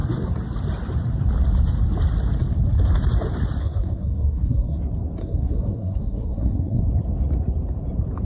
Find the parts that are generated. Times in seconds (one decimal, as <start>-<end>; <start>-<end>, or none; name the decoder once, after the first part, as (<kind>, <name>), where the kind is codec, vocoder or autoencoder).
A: 3.6-4.8 (codec, SNAC); 5.2-6.8